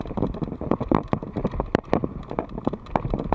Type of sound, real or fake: real